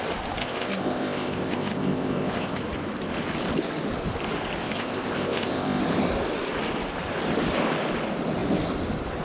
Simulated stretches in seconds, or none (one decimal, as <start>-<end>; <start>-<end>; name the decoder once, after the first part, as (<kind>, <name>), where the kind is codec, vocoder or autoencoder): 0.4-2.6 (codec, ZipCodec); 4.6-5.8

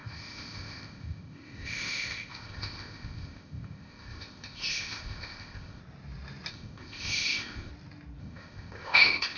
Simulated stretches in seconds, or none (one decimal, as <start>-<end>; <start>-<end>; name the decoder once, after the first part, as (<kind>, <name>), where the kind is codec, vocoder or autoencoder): 0.0-5.8 (codec, ZipCodec); 6.5-7.7; 8.2-9.4

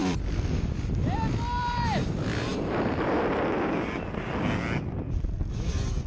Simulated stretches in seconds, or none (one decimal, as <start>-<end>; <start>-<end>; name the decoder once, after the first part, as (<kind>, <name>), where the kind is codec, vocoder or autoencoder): none

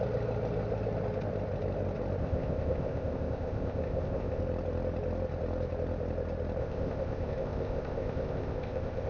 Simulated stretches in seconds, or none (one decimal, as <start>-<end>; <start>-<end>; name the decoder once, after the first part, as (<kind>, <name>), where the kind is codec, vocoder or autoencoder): 2.2-4.4 (codec, ZipCodec); 6.6-9.1

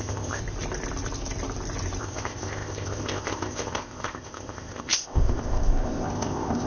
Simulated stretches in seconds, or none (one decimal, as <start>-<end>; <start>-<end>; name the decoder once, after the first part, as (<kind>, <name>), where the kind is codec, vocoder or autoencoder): 0.0-0.4 (codec, ZipCodec); 2.0-6.7

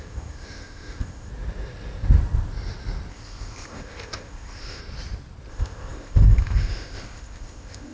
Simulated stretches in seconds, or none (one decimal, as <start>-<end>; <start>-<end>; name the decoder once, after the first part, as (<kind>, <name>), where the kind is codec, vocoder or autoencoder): 0.0-1.3 (codec, ZipCodec); 3.1-4.8; 5.5-7.9